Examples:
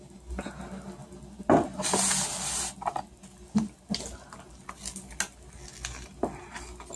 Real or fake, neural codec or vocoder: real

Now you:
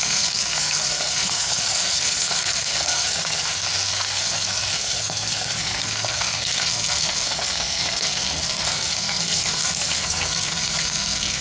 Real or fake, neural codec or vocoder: fake, codec, SNAC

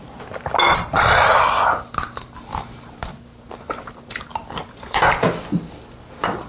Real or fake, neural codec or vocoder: real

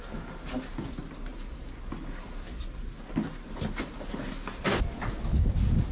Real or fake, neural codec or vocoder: real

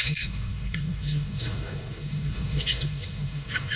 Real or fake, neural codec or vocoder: fake, codec, SNAC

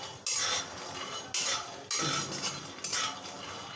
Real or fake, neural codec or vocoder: real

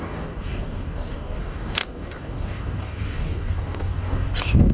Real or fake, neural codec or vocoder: fake, codec, DAC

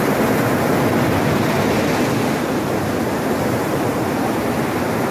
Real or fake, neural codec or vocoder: real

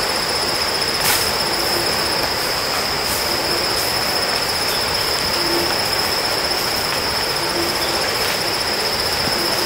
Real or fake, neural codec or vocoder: fake, vocoder, BigVGAN v2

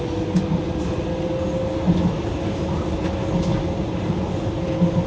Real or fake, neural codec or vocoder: real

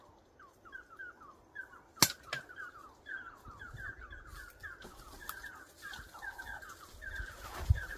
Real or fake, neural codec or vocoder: real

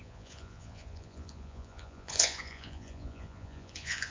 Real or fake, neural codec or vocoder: fake, vocoder, Vocos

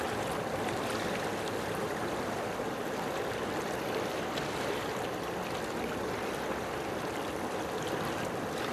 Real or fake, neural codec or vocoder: real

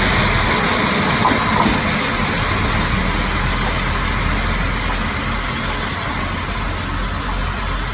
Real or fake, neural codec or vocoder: real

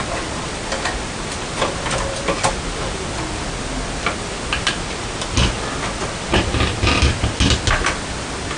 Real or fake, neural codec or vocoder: real